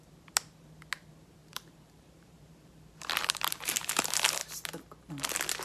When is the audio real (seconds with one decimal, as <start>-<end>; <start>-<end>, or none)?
0.0-1.4; 3.9-5.6